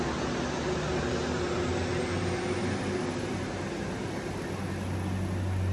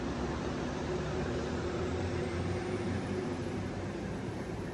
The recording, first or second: first